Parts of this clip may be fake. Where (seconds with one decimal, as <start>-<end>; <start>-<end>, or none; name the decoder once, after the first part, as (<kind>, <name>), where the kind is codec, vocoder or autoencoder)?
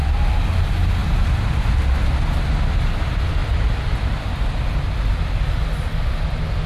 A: 1.0-1.8 (vocoder, BigVGAN v2); 3.4-5.0